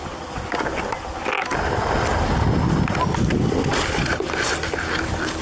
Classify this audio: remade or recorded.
recorded